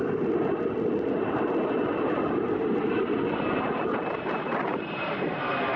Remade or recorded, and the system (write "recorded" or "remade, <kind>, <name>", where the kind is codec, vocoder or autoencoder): recorded